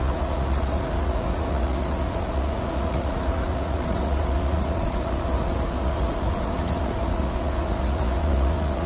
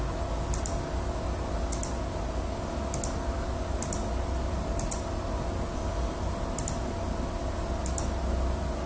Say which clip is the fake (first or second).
first